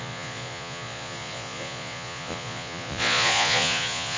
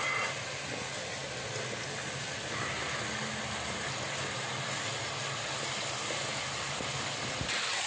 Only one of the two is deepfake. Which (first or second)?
first